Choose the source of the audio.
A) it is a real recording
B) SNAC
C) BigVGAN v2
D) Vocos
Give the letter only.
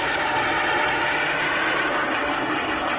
A